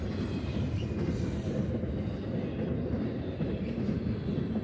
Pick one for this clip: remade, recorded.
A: recorded